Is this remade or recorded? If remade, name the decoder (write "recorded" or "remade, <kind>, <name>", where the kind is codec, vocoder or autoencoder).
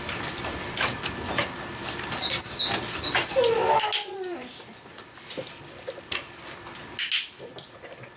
recorded